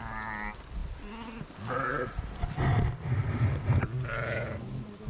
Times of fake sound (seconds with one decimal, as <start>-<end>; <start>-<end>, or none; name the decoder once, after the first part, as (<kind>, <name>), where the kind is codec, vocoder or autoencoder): none